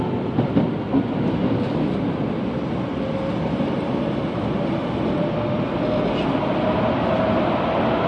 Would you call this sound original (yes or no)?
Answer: yes